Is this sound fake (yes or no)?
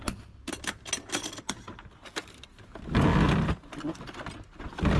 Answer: no